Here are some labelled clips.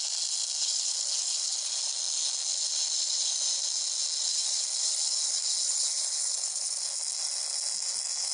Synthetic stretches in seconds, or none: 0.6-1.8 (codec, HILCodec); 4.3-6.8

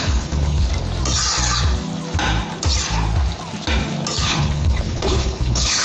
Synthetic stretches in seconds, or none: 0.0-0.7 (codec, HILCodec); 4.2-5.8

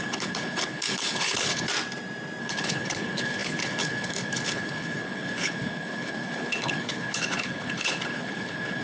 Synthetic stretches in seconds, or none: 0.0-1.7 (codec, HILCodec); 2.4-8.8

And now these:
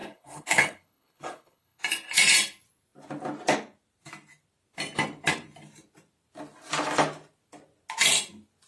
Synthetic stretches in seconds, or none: 0.0-1.8 (codec, HILCodec)

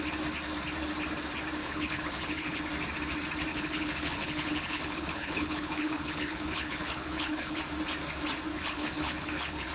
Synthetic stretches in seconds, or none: 1.6-2.6 (codec, HILCodec); 3.5-7.6; 8.5-9.7

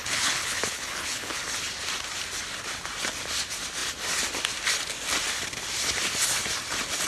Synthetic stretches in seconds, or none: 0.0-1.4 (codec, HILCodec)

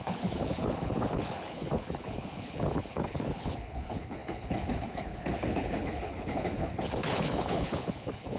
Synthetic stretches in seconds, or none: 0.0-8.4 (codec, HILCodec)